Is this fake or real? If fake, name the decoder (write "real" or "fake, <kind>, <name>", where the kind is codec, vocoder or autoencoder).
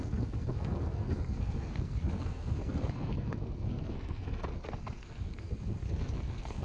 fake, codec, SNAC